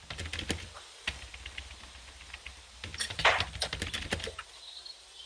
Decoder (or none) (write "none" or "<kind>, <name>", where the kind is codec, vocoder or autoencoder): none